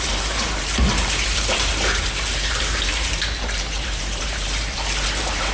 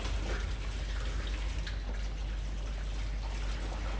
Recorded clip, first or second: second